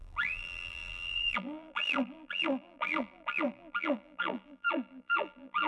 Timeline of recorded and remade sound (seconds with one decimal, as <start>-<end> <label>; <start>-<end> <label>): 0.0-5.7 remade